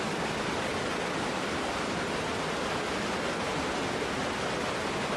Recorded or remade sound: recorded